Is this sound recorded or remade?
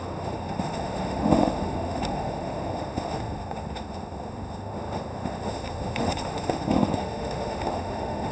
remade